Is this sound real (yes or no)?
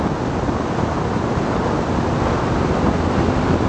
yes